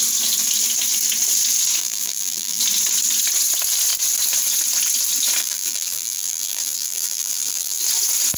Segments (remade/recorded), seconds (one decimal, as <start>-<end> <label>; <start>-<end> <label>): 0.0-1.8 recorded; 1.8-2.6 remade; 2.6-5.4 recorded; 5.4-7.8 remade; 7.8-8.4 recorded